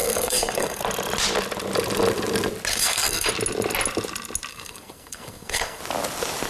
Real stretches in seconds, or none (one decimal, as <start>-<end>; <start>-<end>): 0.8-2.7; 3.3-4.5; 5.8-6.5